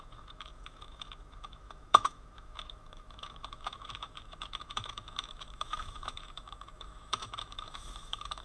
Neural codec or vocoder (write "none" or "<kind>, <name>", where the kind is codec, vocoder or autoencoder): autoencoder, DAC-VAE